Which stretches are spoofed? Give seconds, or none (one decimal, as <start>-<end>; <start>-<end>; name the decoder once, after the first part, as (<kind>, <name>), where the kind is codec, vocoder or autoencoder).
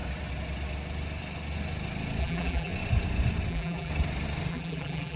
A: 2.2-2.7 (vocoder, BigVGAN v2); 3.5-3.9; 4.5-5.2